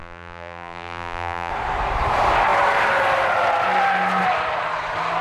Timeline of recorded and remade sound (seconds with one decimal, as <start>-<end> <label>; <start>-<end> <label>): 0.0-1.5 remade; 1.5-5.2 recorded